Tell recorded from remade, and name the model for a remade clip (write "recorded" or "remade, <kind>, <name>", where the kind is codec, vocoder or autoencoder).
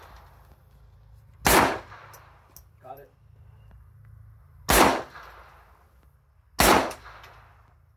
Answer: recorded